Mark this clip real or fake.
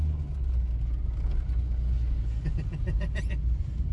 real